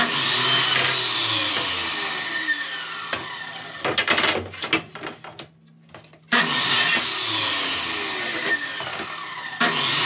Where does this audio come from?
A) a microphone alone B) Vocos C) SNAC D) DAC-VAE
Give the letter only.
A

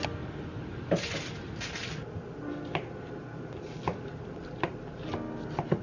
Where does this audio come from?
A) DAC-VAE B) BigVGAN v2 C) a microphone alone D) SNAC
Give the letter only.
C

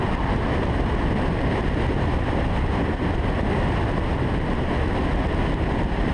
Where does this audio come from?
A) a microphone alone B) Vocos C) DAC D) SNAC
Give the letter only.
A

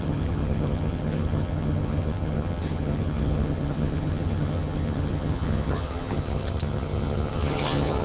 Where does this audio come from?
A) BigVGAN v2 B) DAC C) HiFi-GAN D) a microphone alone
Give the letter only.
C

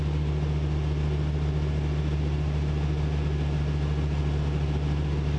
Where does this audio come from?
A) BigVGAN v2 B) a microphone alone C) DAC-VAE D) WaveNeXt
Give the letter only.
B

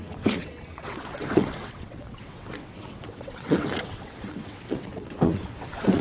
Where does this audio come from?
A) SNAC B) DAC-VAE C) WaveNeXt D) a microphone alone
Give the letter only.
C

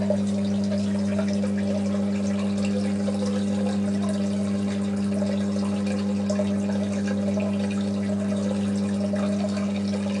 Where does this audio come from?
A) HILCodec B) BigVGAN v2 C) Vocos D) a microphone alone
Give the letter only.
D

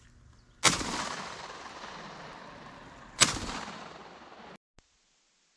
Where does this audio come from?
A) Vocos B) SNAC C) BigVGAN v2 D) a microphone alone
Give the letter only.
D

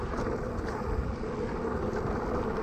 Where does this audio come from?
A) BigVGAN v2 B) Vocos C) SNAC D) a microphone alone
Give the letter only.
D